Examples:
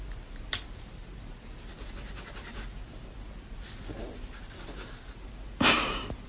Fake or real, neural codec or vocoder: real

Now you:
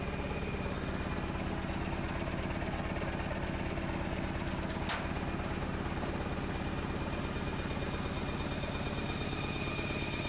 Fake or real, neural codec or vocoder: real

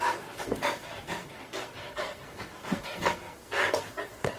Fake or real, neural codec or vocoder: fake, codec, SNAC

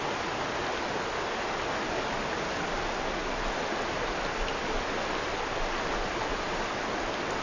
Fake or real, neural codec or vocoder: real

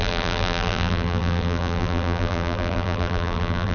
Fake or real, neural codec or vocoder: fake, vocoder, BigVGAN v2